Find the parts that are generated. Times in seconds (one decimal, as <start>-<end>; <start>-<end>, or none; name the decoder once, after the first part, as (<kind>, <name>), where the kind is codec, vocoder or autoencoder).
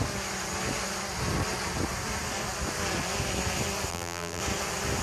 3.9-4.4 (vocoder, BigVGAN v2)